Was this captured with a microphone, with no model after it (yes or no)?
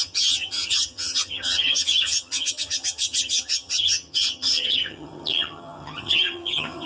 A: no